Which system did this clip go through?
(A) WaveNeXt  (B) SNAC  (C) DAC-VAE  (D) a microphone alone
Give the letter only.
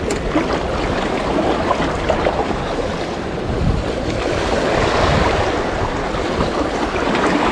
D